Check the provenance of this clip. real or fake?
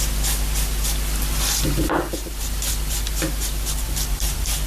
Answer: real